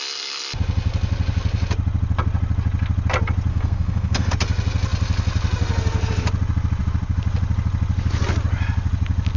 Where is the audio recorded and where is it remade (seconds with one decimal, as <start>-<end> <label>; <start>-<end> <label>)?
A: 0.0-3.5 recorded; 3.5-4.3 remade; 4.3-9.4 recorded